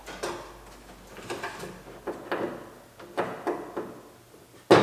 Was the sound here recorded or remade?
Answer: recorded